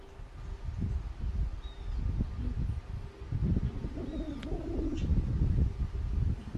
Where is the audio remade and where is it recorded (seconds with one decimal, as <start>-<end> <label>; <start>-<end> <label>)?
0.0-3.4 recorded; 3.4-4.4 remade; 4.4-6.6 recorded